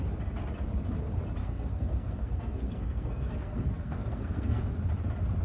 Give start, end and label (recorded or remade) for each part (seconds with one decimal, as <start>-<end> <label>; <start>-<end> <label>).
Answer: 0.0-1.4 recorded; 1.4-4.6 remade; 4.6-5.4 recorded